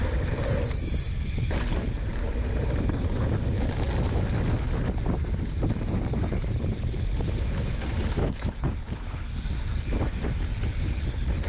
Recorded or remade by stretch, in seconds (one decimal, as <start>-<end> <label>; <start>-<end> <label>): 0.0-8.2 recorded; 8.2-9.3 remade; 9.3-11.5 recorded